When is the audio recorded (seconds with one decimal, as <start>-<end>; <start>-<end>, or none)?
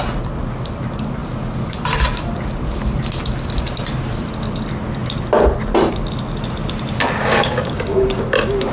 0.0-7.2; 8.2-8.7